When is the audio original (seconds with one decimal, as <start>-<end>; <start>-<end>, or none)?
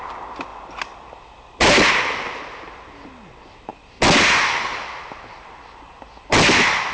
0.0-6.9